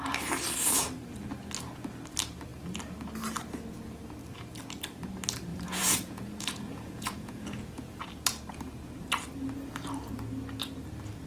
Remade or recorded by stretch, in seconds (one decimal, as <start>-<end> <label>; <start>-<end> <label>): 0.0-5.5 recorded; 5.5-8.0 remade; 8.0-11.3 recorded